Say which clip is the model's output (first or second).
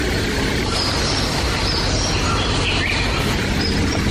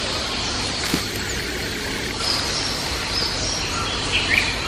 second